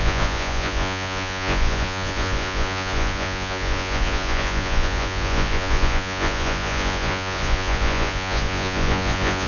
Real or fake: fake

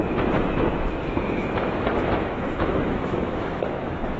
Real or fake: fake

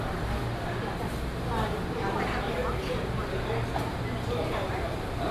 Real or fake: real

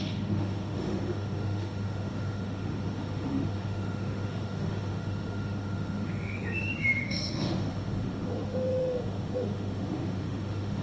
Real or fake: fake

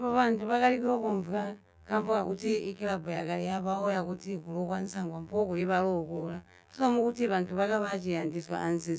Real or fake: fake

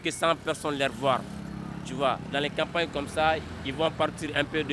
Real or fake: fake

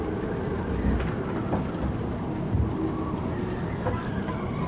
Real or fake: real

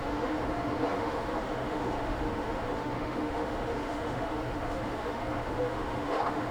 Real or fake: fake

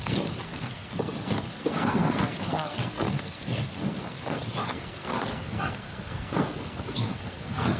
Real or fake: fake